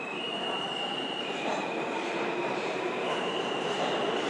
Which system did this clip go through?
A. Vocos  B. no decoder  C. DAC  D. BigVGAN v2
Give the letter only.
D